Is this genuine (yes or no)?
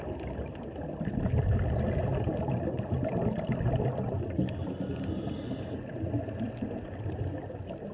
yes